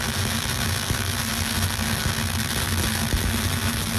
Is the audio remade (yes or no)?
no